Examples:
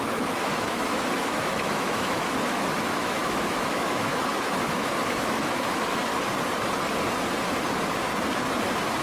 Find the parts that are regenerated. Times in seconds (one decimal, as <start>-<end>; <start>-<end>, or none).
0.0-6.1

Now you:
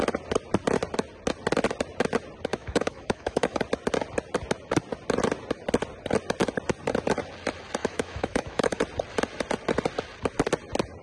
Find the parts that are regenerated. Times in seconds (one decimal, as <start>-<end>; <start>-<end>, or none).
2.5-3.6; 7.8-8.8

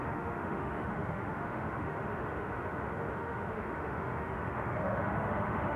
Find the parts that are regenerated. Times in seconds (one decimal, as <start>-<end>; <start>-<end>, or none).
0.0-5.8

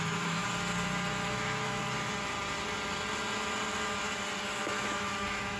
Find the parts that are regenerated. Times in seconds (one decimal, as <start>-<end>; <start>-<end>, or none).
0.0-0.4; 1.3-1.8; 4.6-5.6

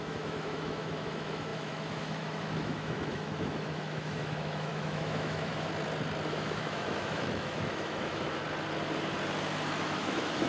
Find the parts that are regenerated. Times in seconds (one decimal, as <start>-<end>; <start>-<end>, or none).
0.0-5.7; 6.3-8.4; 9.8-10.5